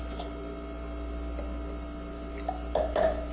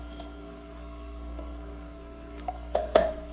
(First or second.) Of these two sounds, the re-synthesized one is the second